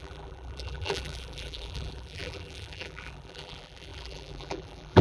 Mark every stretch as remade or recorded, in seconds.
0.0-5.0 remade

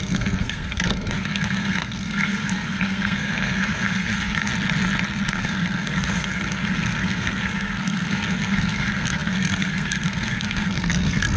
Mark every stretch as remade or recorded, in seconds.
0.0-4.5 remade; 4.5-5.3 recorded; 5.3-11.4 remade

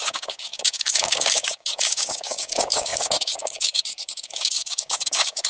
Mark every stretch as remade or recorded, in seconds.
0.0-5.5 remade

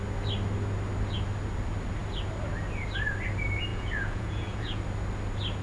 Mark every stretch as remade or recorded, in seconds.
0.0-3.7 recorded; 3.7-4.8 remade; 4.8-5.6 recorded